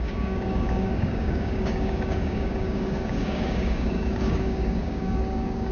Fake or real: fake